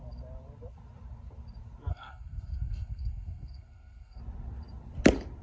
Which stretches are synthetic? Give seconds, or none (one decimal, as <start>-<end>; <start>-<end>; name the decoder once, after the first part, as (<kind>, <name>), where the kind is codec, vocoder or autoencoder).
1.9-4.2 (codec, SNAC)